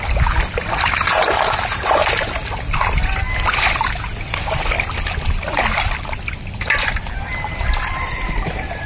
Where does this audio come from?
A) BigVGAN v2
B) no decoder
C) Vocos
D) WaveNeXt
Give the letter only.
A